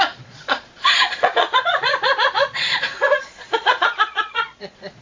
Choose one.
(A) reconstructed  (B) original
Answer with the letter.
A